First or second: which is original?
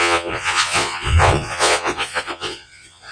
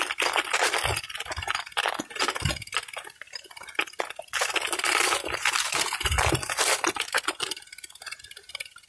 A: second